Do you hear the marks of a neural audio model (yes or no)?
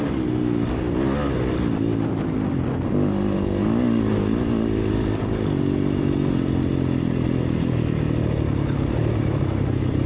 no